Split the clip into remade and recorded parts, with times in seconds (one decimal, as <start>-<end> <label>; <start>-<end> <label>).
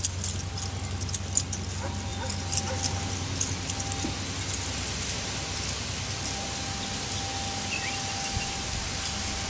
0.0-9.5 recorded